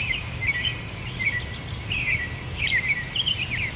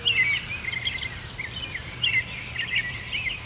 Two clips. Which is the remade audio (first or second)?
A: first